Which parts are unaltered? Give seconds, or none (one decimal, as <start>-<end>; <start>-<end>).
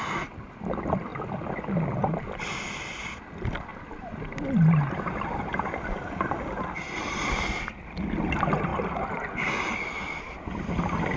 0.0-11.2